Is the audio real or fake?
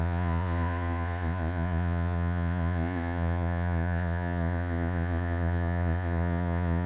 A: fake